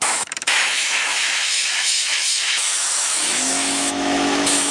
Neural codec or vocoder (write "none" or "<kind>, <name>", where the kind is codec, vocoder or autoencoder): autoencoder, DAC-VAE